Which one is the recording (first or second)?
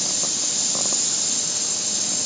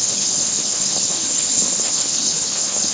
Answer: first